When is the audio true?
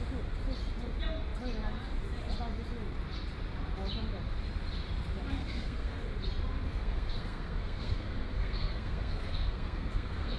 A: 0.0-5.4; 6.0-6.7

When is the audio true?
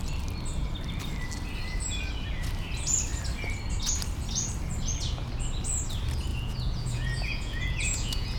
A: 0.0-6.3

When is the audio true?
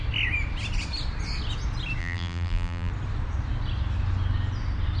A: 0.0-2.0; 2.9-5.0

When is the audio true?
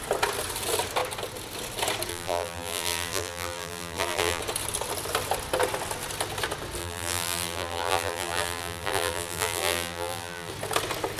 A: 0.0-2.1; 4.4-6.8; 10.5-11.2